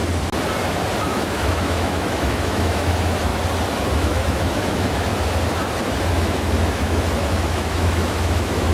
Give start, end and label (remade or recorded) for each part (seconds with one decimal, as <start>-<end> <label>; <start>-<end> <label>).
0.0-1.0 recorded; 1.0-3.3 remade; 3.3-3.9 recorded; 3.9-5.1 remade; 5.1-6.1 recorded; 6.1-8.7 remade